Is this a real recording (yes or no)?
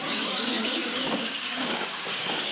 no